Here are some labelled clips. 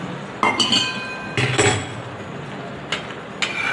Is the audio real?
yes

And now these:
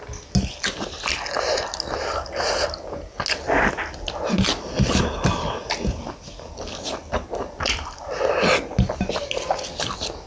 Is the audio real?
yes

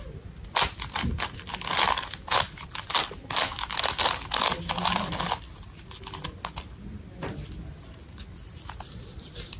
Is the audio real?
yes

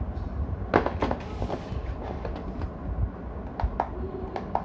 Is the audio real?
yes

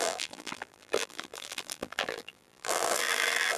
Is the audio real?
no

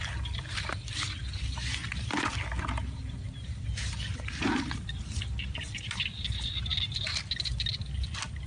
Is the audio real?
yes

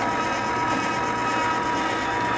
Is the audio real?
yes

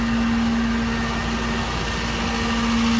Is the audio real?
yes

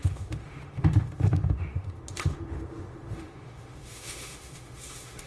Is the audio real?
no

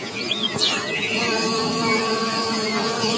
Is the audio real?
no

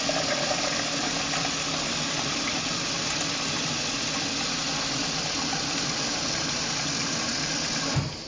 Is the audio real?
yes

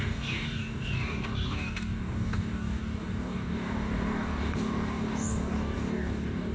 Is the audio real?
no